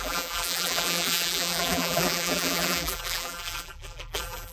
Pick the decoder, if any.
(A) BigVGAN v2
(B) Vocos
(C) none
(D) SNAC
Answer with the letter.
A